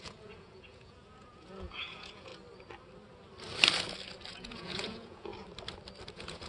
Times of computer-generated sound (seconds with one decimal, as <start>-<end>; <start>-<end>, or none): 0.0-2.3; 4.3-5.3; 6.1-6.5